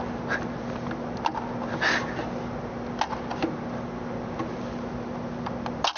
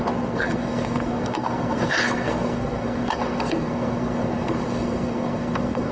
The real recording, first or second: first